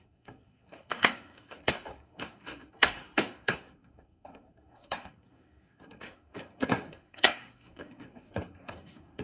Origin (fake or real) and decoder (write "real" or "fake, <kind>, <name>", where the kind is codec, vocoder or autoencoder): fake, codec, SNAC